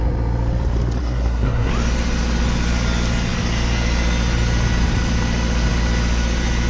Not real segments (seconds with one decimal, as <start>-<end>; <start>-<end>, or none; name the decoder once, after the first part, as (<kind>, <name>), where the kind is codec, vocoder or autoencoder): 1.0-1.7 (codec, SNAC)